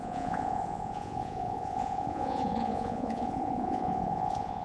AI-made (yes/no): yes